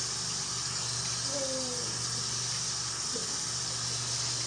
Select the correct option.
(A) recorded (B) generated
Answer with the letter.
A